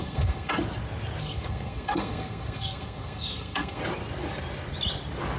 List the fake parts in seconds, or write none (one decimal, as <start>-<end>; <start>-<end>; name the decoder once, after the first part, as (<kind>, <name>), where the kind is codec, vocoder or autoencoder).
0.0-0.5 (codec, SNAC); 1.2-3.8